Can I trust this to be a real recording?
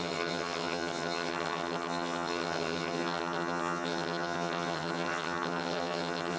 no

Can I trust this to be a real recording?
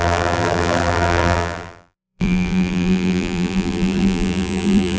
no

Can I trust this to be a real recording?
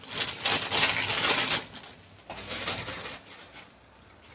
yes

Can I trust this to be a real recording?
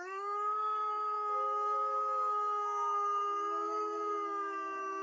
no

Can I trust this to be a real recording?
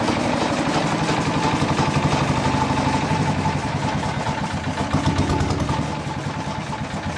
yes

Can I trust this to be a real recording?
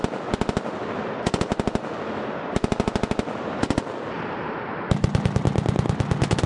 yes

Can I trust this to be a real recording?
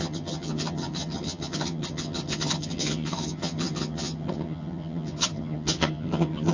no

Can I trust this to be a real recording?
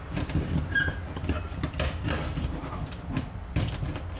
yes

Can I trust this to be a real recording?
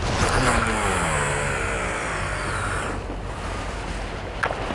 yes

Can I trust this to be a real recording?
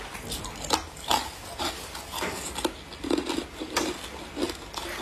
yes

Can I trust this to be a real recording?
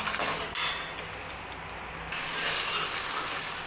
yes